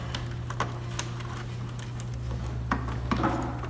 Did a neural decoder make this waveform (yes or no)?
no